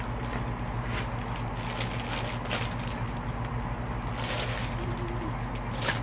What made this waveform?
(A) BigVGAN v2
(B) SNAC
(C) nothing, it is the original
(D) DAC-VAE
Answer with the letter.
C